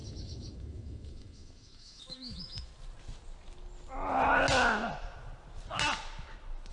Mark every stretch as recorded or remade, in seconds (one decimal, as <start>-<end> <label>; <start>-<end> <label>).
0.0-2.7 remade; 2.7-6.7 recorded